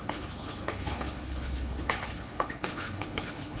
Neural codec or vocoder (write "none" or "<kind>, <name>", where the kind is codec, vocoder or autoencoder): codec, HILCodec